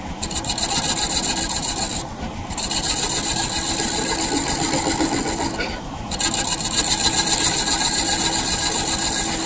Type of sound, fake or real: real